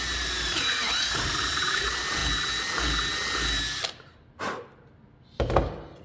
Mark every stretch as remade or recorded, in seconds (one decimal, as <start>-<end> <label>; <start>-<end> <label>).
0.0-2.2 remade; 2.2-6.0 recorded